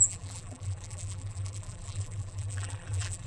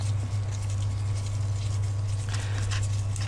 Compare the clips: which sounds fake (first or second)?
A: first